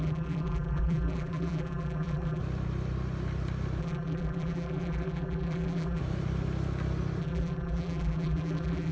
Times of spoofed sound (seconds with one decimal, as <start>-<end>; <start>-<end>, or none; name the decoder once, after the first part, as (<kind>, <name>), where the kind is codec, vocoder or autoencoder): 0.0-2.4 (vocoder, BigVGAN v2); 3.8-6.0; 7.2-8.9